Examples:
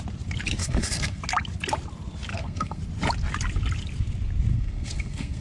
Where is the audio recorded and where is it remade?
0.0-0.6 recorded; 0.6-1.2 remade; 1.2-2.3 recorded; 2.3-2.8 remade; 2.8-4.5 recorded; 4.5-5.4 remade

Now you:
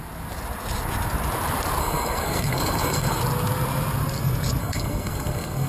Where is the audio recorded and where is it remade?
0.0-1.8 recorded; 1.8-3.2 remade; 3.2-4.6 recorded; 4.6-5.7 remade

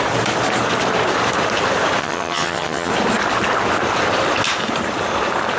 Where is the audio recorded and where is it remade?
0.0-2.0 recorded; 2.0-2.9 remade; 2.9-5.6 recorded

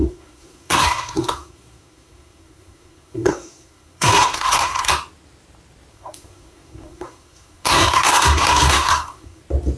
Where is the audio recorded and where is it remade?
0.0-4.9 remade; 4.9-5.9 recorded; 5.9-9.4 remade; 9.4-9.8 recorded

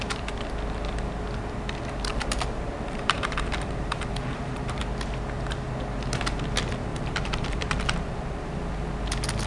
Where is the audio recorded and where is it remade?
0.0-2.1 recorded; 2.1-4.8 remade; 4.8-6.9 recorded; 6.9-8.6 remade; 8.6-9.5 recorded

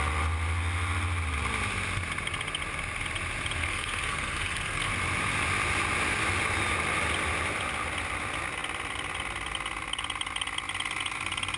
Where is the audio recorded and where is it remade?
0.0-3.6 recorded; 3.6-4.9 remade; 4.9-11.6 recorded